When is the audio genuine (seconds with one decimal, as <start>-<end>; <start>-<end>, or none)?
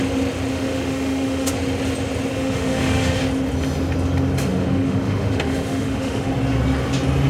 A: 0.0-0.5; 1.5-2.3; 3.2-4.5; 6.3-7.3